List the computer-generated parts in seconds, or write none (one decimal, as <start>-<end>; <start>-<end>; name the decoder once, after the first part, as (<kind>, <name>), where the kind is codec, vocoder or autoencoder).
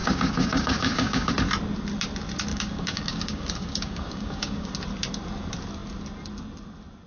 0.0-1.3 (codec, DAC); 2.5-4.7